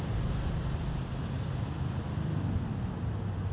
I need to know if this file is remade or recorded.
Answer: recorded